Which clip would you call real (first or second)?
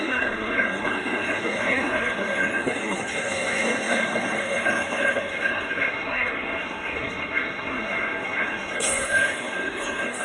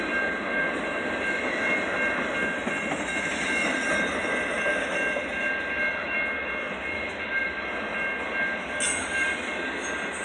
second